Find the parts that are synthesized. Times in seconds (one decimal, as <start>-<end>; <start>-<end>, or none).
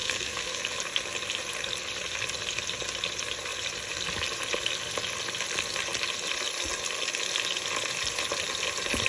0.0-0.6